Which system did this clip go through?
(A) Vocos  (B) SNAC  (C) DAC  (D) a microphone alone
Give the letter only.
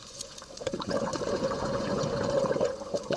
A